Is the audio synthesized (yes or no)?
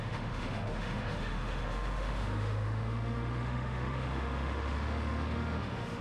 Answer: yes